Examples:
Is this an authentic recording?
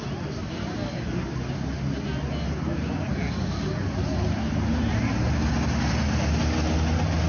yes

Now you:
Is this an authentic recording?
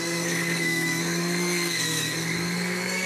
no